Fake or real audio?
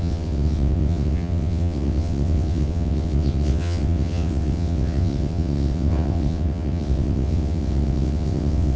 fake